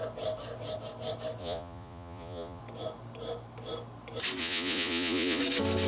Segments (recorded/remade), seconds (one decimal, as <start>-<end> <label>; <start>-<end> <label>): 0.0-1.4 recorded; 1.4-2.6 remade; 2.6-4.4 recorded; 4.4-5.4 remade; 5.4-5.9 recorded